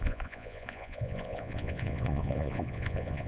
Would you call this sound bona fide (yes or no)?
no